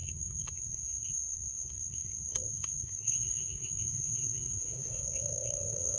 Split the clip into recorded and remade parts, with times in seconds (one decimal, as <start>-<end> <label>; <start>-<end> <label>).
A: 0.0-6.0 remade